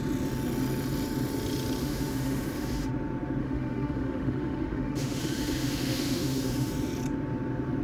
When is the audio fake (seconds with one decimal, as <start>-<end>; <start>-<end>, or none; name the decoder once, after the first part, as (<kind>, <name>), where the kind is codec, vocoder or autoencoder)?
1.8-2.9 (autoencoder, DAC-VAE); 3.4-6.7